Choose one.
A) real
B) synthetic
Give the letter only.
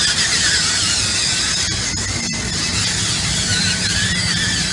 A